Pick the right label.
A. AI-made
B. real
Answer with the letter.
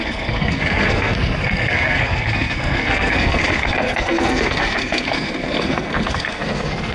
A